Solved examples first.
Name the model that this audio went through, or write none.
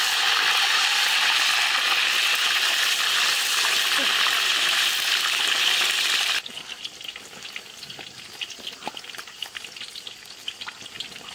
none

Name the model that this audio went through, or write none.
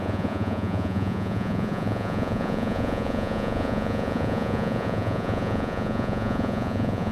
vocoder, Vocos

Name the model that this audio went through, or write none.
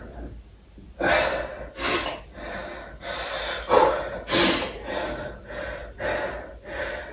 none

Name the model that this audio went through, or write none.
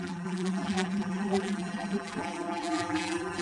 vocoder, BigVGAN v2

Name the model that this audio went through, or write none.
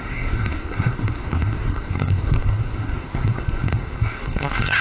codec, SNAC